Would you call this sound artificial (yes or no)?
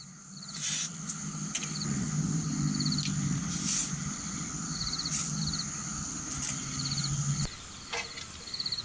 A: no